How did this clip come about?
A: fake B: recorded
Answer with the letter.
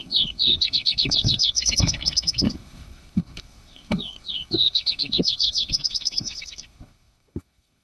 A